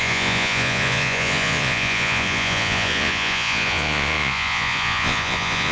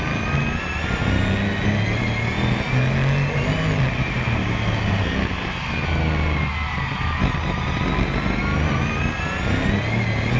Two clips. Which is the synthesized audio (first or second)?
first